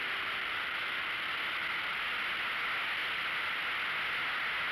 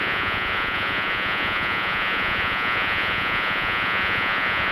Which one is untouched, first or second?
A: first